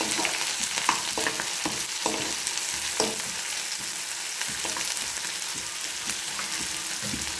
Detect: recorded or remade recorded